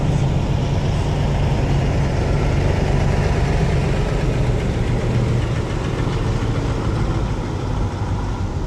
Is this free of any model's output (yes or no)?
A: yes